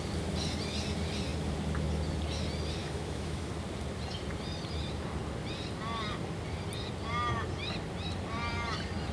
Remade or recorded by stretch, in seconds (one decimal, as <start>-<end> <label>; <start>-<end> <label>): 0.0-2.8 recorded; 2.8-3.5 remade; 3.5-9.1 recorded